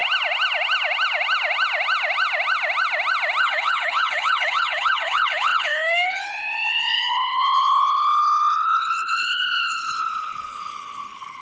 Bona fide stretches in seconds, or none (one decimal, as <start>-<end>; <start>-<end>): 0.0-3.4